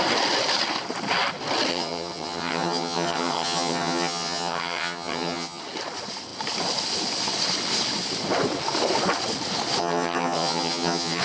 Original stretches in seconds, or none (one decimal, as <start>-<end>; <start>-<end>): 0.0-1.7; 5.6-9.8